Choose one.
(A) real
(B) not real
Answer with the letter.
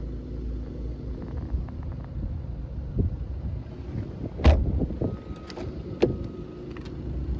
A